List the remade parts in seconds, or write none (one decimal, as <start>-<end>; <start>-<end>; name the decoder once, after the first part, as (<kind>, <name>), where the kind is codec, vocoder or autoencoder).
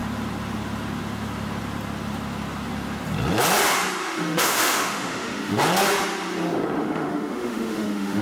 4.0-5.6 (autoencoder, DAC-VAE); 6.8-8.2